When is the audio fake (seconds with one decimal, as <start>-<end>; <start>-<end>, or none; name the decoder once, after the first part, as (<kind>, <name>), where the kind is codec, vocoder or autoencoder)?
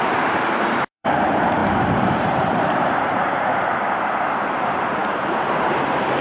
0.0-6.2 (vocoder, BigVGAN v2)